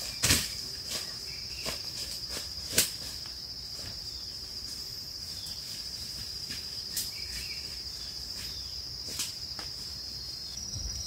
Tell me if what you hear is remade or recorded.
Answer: remade